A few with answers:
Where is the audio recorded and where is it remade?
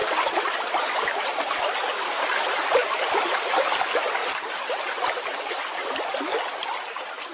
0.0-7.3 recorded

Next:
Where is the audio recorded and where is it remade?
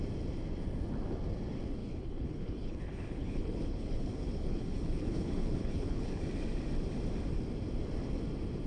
0.0-1.8 recorded; 1.8-6.2 remade; 6.2-8.7 recorded